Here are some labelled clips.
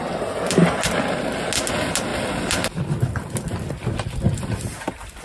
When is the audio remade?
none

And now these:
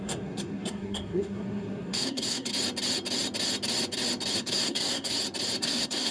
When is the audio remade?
0.0-2.5 (codec, SNAC); 4.4-5.1; 5.6-6.1

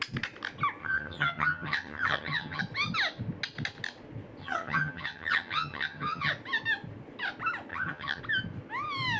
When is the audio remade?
0.8-2.6 (vocoder, HiFi-GAN); 4.4-6.3; 7.7-8.2

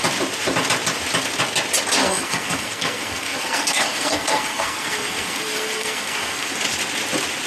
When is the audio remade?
2.0-6.5 (codec, SNAC)

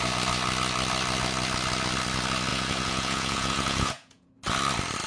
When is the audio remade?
2.5-4.3 (vocoder, Vocos)

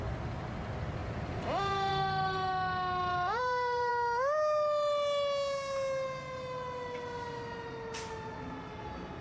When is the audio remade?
1.0-1.9 (vocoder, BigVGAN v2); 3.1-3.9

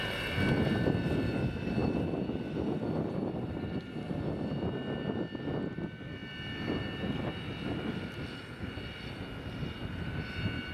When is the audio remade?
1.8-4.1 (vocoder, BigVGAN v2)